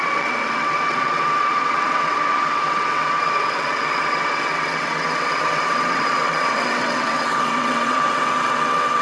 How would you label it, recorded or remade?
remade